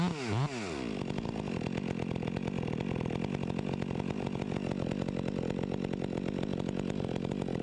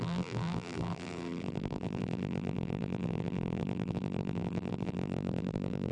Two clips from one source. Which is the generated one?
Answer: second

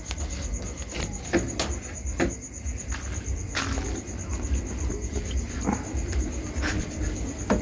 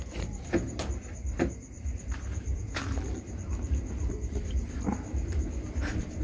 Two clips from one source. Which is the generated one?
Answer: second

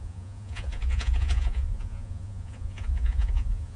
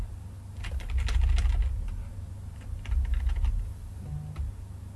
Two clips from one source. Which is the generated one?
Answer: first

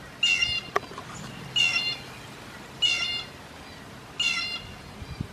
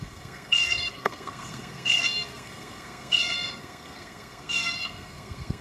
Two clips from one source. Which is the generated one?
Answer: second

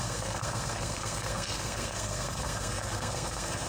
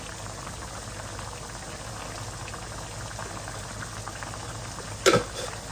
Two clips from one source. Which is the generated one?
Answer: first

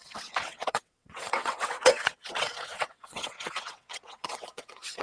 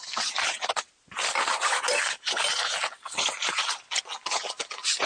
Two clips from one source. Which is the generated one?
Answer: first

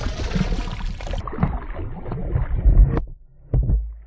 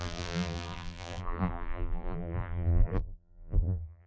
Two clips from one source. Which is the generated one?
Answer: second